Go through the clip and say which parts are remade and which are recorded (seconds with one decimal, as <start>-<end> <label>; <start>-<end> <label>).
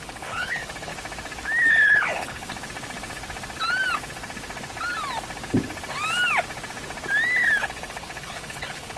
0.0-0.9 remade; 0.9-1.7 recorded; 1.7-2.5 remade; 2.5-7.6 recorded; 7.6-9.0 remade